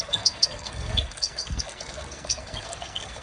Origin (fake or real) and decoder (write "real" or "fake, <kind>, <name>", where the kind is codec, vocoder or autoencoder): fake, codec, SNAC